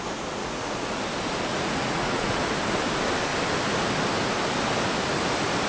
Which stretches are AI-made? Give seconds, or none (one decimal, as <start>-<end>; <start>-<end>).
0.4-1.0; 1.5-2.4